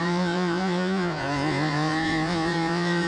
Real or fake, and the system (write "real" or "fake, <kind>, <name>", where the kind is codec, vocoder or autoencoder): fake, vocoder, Vocos